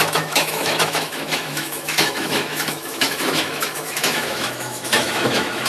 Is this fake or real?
fake